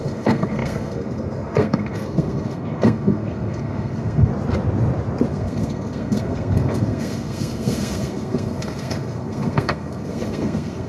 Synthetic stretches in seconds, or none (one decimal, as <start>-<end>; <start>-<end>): 0.0-4.3; 5.3-10.9